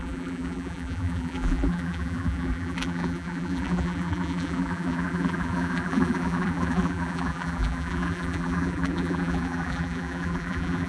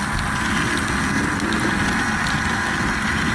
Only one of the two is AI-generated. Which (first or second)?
first